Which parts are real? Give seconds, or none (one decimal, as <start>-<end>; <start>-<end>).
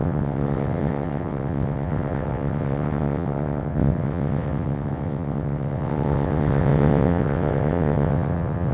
none